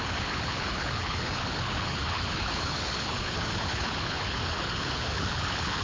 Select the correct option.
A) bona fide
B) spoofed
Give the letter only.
B